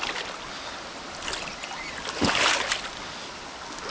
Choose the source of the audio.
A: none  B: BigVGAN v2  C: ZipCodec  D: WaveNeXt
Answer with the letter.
A